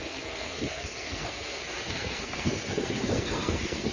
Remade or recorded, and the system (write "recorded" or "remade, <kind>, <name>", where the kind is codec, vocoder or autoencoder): remade, codec, SNAC